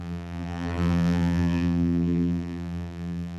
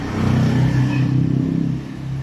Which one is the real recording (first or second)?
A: second